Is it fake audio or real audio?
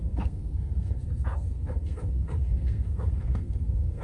fake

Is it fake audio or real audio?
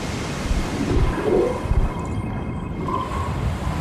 real